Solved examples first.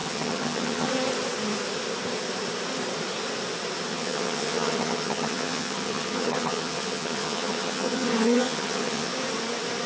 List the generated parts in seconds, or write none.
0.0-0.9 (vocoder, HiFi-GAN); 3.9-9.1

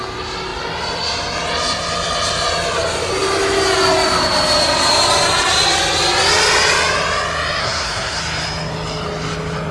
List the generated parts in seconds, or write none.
7.6-8.2 (codec, SNAC)

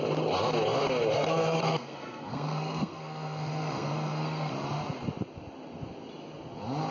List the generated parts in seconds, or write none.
1.1-4.5 (codec, SNAC)

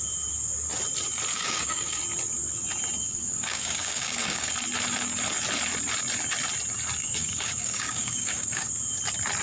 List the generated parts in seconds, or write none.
1.3-2.0 (codec, DAC); 3.0-4.5; 7.0-8.7

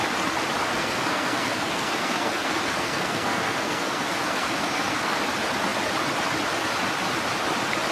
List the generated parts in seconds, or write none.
0.7-5.2 (codec, SNAC)

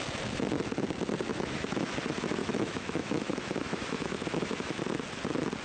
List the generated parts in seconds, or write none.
1.3-2.0 (autoencoder, DAC-VAE); 2.4-4.8

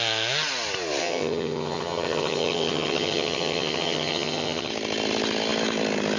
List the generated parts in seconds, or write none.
1.0-4.7 (vocoder, HiFi-GAN)